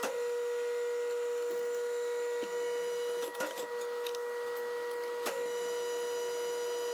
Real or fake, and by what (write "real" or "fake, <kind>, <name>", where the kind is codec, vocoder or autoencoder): real